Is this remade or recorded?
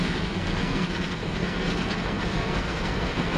remade